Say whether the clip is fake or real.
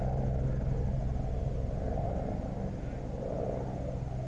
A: real